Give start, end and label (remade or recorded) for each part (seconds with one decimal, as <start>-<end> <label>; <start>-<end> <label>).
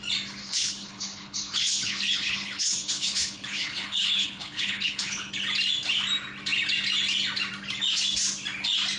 0.0-0.4 recorded; 0.4-5.3 remade; 5.3-9.0 recorded